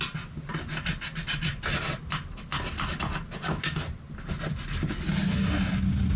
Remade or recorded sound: recorded